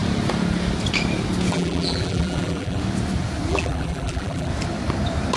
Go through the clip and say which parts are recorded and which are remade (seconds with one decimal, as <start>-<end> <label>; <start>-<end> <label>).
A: 0.0-1.5 recorded; 1.5-2.8 remade; 2.8-3.5 recorded; 3.5-4.5 remade; 4.5-5.4 recorded